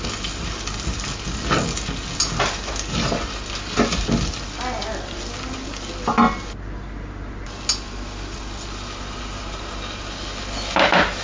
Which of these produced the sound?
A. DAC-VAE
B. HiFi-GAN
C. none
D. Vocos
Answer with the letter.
C